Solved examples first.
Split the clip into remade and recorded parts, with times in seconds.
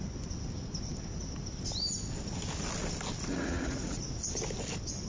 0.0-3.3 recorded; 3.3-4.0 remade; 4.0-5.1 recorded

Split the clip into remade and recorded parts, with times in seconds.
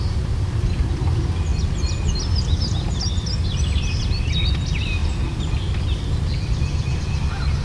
0.0-5.0 recorded; 5.0-7.0 remade; 7.0-7.6 recorded